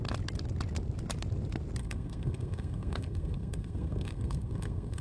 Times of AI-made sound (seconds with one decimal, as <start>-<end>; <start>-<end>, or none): 1.8-5.0